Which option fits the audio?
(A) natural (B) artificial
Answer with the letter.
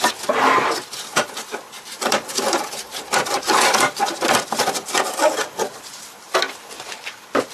B